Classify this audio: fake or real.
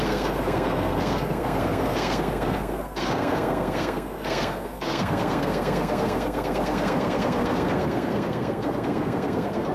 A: fake